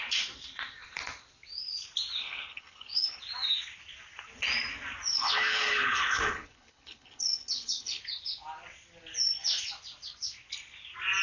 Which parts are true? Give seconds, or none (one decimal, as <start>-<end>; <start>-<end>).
0.0-2.2; 3.2-5.1; 8.0-11.2

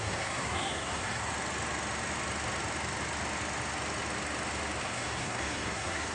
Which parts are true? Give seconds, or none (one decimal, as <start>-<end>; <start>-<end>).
1.3-4.8

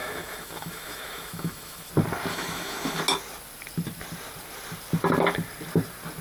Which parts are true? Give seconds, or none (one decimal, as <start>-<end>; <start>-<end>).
1.9-2.3; 3.0-6.2

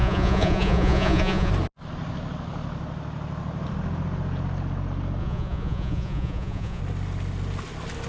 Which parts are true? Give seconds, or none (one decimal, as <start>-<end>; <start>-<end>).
1.5-5.2; 6.8-8.1

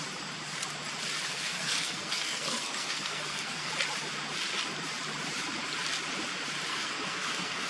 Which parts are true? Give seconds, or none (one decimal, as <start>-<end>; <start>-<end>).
0.0-1.3; 3.7-6.7